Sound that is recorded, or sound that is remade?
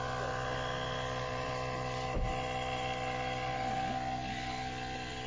recorded